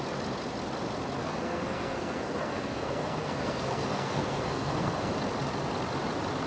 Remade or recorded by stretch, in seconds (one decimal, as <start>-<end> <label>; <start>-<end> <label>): 0.0-1.2 recorded; 1.2-5.1 remade; 5.1-6.5 recorded